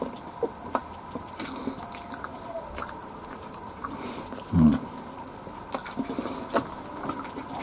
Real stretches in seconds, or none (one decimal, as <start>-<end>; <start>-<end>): 0.0-2.3; 4.8-7.6